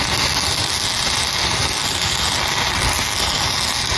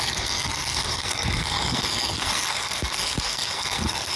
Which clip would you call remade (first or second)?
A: second